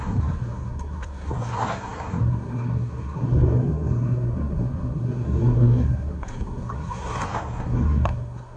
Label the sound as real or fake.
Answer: fake